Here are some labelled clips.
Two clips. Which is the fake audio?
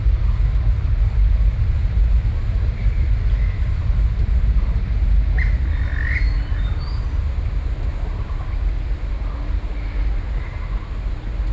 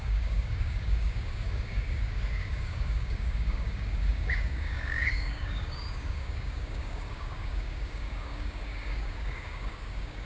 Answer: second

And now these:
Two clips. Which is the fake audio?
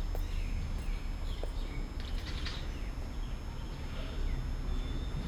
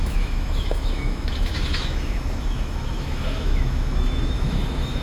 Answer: second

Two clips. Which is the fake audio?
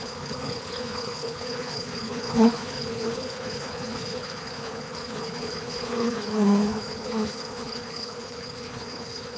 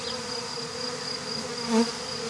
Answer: first